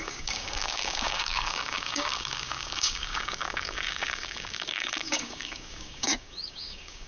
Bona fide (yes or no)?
no